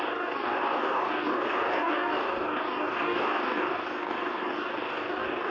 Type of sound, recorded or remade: remade